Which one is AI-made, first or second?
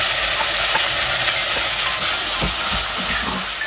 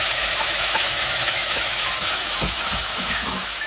second